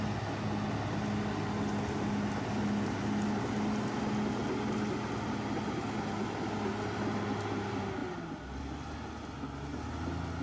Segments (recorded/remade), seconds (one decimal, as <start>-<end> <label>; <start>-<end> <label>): 0.0-10.4 recorded

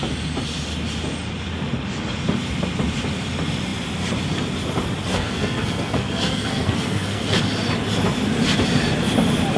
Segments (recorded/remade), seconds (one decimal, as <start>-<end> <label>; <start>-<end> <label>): 0.0-5.1 recorded; 5.1-7.4 remade; 7.4-9.6 recorded

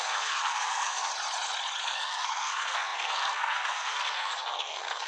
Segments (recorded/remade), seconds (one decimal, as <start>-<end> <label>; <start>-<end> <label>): 0.0-1.1 remade; 1.1-1.8 recorded; 1.8-5.1 remade